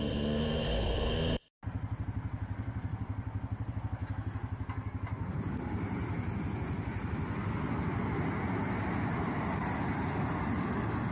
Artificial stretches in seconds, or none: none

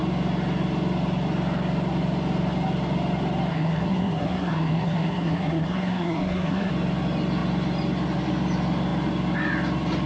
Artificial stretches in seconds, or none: 3.5-6.7 (codec, SNAC)

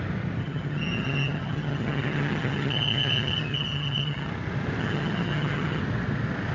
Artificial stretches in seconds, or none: 0.4-4.3 (vocoder, HiFi-GAN); 4.8-5.8